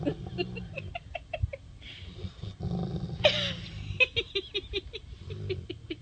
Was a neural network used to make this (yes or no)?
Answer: no